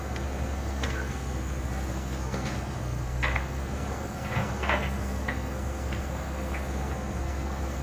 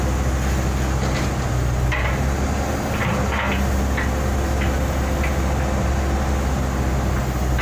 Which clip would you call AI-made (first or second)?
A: first